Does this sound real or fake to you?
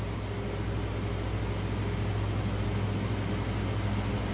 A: real